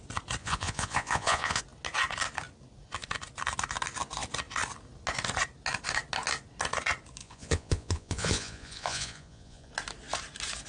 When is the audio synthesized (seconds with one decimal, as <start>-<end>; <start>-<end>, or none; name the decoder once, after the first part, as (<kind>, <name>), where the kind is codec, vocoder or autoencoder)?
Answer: 0.4-1.6 (vocoder, Vocos); 7.2-9.7